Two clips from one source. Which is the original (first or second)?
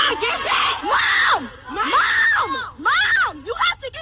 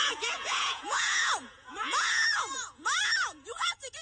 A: first